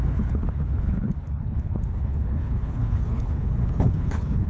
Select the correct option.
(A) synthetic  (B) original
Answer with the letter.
A